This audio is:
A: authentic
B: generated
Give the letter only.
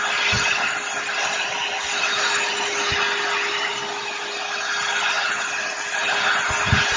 A